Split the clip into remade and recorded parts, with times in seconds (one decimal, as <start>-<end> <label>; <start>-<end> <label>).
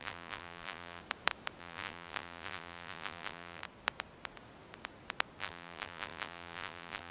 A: 0.0-1.0 remade; 1.0-1.6 recorded; 1.6-3.6 remade; 3.6-5.4 recorded; 5.4-7.1 remade